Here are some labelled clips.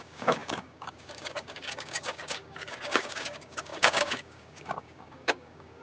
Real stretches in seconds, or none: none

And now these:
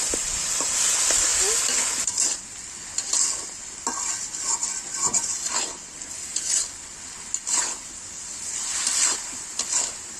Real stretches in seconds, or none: 0.0-10.2

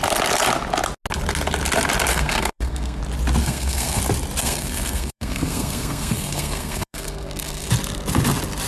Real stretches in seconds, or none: 0.0-2.1; 3.0-3.4; 4.0-4.4; 7.7-8.7

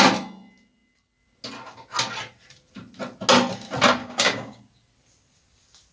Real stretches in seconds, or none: 0.0-4.0; 4.6-5.9

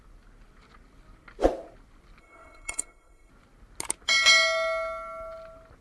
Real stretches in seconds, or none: 0.0-2.2; 3.3-5.8

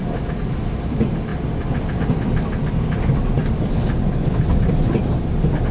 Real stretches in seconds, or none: 0.0-5.7